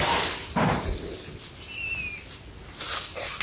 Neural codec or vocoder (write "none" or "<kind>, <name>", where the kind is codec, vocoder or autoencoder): none